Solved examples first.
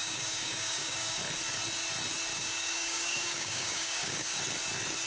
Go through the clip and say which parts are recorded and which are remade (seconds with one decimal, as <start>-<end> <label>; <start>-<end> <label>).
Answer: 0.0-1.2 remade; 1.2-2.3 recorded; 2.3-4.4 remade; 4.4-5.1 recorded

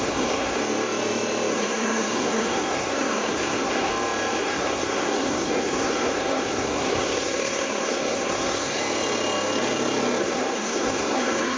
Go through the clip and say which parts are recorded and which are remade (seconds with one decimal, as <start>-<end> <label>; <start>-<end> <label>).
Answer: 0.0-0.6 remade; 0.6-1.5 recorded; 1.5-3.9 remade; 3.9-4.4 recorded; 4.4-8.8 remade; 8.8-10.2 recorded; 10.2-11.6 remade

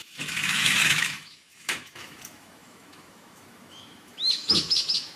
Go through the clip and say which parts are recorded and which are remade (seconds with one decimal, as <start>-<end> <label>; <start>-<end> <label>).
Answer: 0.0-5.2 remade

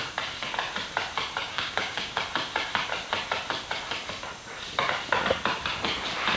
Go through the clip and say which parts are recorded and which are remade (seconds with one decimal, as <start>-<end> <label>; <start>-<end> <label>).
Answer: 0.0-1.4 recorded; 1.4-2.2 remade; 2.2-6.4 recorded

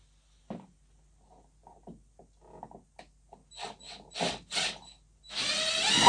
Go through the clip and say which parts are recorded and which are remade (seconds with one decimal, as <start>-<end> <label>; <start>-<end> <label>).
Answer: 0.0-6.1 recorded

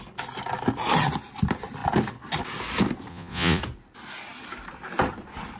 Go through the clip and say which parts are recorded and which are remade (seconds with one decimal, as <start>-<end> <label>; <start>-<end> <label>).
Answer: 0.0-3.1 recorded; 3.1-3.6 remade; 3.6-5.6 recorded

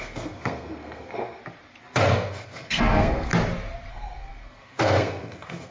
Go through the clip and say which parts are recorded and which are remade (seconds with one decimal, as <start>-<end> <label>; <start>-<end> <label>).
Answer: 0.0-1.4 remade; 1.4-2.1 recorded; 2.1-3.3 remade; 3.3-3.9 recorded; 3.9-5.7 remade

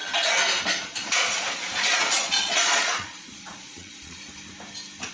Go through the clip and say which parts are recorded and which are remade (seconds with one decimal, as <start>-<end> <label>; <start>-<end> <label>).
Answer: 0.0-0.8 recorded; 0.8-4.2 remade; 4.2-5.1 recorded